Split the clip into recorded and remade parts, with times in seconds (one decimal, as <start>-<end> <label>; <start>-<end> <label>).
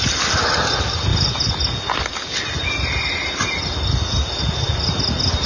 0.0-5.5 recorded